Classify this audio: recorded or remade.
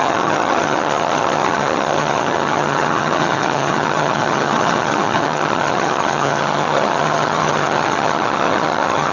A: remade